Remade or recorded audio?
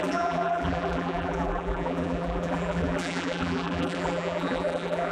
remade